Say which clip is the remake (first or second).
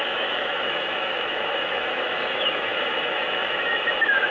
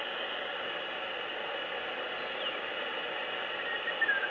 first